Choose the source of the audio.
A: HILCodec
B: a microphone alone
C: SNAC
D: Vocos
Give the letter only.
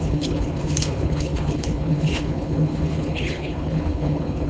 A